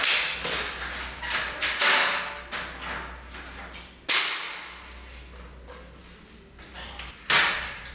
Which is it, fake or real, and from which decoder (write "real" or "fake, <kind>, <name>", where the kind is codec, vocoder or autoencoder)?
real